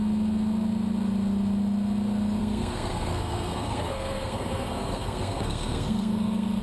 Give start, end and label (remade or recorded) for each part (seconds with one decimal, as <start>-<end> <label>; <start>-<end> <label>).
0.0-2.4 recorded; 2.4-6.6 remade